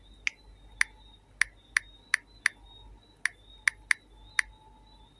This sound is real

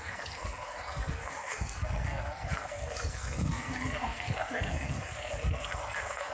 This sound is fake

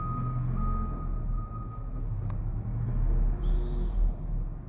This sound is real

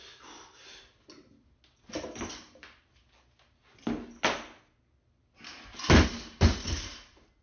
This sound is real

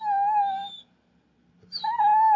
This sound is real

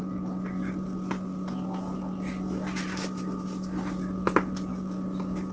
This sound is real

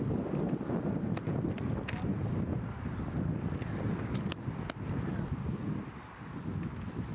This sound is real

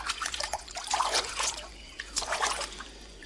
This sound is fake